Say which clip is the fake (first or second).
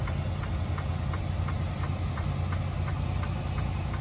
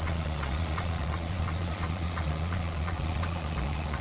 second